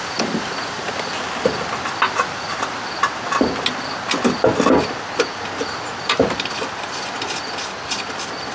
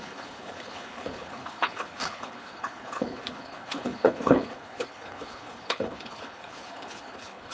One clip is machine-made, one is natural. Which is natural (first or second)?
first